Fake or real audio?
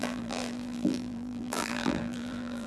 fake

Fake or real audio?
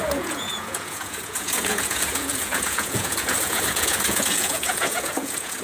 fake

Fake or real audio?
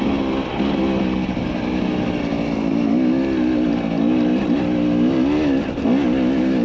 real